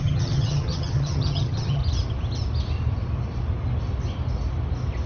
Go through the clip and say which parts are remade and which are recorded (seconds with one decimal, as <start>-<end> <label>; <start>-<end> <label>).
0.0-1.8 remade; 1.8-5.1 recorded